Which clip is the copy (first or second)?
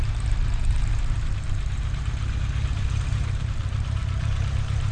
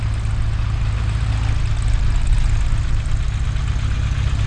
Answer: first